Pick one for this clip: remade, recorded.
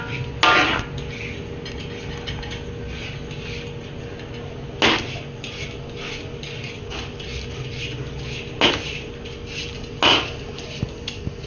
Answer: recorded